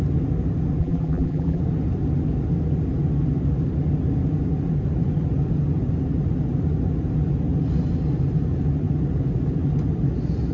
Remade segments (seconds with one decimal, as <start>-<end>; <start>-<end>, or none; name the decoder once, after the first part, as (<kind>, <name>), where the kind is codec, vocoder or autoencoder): 0.8-1.6 (vocoder, BigVGAN v2)